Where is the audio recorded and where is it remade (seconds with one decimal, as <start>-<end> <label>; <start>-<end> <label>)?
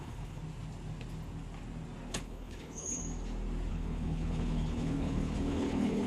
0.0-0.4 remade; 0.4-2.1 recorded; 2.1-3.0 remade; 3.0-3.7 recorded; 3.7-6.1 remade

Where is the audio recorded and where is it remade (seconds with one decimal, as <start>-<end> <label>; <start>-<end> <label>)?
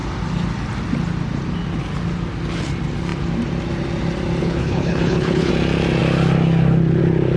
0.0-4.4 recorded; 4.4-5.5 remade; 5.5-7.4 recorded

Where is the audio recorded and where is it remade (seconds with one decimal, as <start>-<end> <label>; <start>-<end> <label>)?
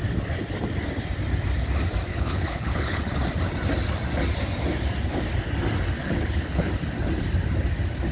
0.0-2.1 recorded; 2.1-3.0 remade; 3.0-6.0 recorded; 6.0-6.7 remade; 6.7-8.1 recorded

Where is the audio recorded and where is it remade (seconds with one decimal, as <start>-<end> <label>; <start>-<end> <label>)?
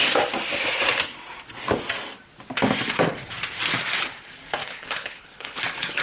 0.0-4.6 recorded; 4.6-5.6 remade; 5.6-6.0 recorded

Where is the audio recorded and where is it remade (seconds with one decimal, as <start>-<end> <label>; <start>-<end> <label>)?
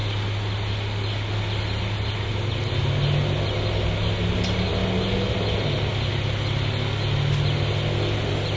0.0-8.6 recorded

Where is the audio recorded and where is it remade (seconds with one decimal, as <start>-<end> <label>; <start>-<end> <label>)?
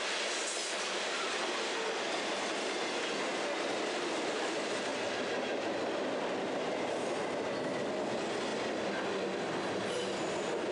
0.0-10.7 recorded